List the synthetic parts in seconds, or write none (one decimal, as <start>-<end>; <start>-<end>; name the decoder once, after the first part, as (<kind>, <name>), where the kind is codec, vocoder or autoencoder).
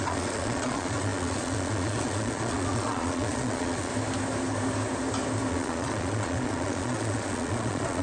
0.0-3.9 (vocoder, Vocos); 5.5-8.0